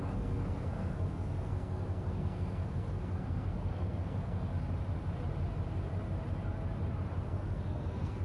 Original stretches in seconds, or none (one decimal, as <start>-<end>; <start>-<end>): 4.5-7.2